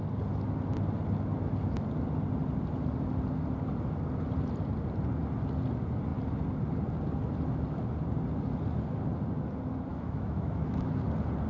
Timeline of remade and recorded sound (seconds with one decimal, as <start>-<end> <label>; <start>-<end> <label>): 0.0-9.9 recorded; 9.9-10.9 remade; 10.9-11.5 recorded

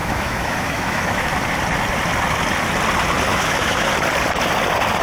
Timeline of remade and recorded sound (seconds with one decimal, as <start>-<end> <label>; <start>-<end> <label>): 0.0-1.3 remade; 1.3-3.3 recorded; 3.3-3.9 remade; 3.9-5.0 recorded

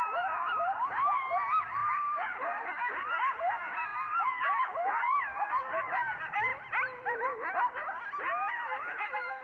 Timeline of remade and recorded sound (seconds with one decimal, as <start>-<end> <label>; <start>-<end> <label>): 0.0-6.5 remade; 6.5-8.5 recorded; 8.5-9.4 remade

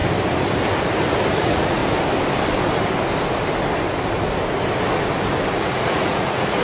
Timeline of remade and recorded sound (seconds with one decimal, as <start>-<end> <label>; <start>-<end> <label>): 0.0-1.3 recorded; 1.3-1.8 remade; 1.8-5.6 recorded; 5.6-6.6 remade

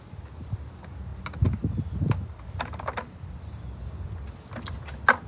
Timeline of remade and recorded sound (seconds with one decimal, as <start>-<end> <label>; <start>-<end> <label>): 0.0-5.3 recorded

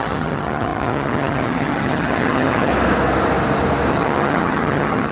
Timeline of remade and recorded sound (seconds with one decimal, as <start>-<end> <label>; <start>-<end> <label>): 0.0-2.7 remade; 2.7-3.9 recorded; 3.9-5.1 remade

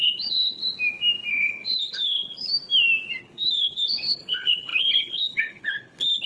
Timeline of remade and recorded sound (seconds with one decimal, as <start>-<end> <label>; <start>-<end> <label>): 0.0-0.6 remade; 0.6-1.3 recorded; 1.3-2.5 remade; 2.5-3.2 recorded; 3.2-6.3 remade

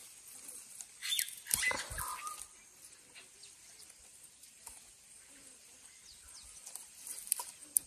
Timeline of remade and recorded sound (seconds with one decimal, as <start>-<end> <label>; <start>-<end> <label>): 0.0-4.1 recorded; 4.1-5.2 remade; 5.2-7.9 recorded